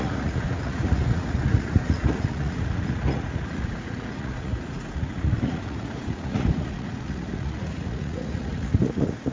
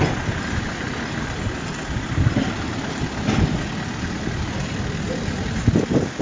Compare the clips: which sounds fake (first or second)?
first